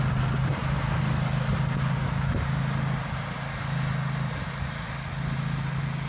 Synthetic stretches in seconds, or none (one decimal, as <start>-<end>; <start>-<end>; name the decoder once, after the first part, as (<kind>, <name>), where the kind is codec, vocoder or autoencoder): none